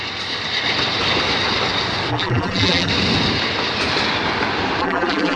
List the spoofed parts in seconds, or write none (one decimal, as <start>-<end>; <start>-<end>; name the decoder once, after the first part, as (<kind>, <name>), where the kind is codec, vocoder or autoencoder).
2.1-2.9 (vocoder, BigVGAN v2); 4.8-5.4